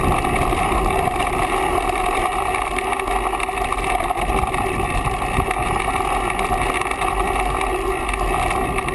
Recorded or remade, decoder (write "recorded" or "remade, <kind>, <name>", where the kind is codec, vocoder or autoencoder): recorded